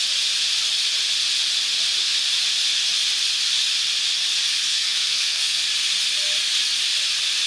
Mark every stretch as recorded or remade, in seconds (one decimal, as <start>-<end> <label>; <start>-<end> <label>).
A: 0.0-4.7 recorded; 4.7-5.6 remade; 5.6-7.5 recorded